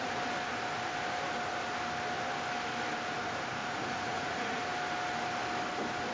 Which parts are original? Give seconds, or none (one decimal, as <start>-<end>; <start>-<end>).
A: 0.0-3.6; 4.6-6.1